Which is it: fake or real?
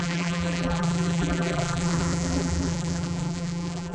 fake